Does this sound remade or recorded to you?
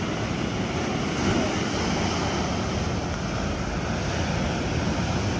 recorded